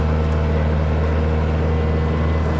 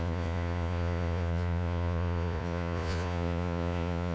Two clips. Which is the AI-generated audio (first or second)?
second